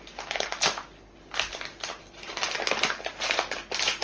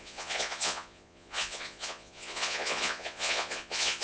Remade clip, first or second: second